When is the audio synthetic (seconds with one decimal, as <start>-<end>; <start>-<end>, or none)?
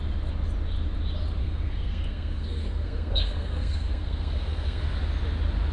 1.4-4.8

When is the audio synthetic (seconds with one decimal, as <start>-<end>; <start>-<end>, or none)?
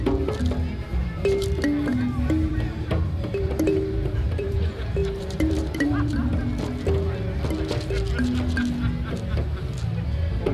1.0-1.6; 2.5-4.6; 5.0-6.4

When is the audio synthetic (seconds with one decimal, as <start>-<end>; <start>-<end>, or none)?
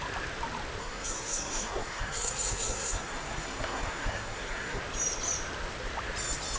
0.8-4.8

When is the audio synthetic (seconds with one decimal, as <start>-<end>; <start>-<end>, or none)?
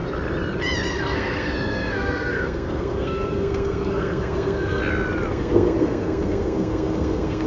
0.9-4.8; 5.3-7.5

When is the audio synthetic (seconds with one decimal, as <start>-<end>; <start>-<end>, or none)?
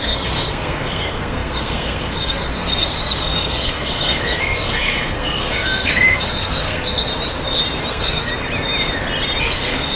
0.0-7.1; 7.9-8.3; 9.4-10.0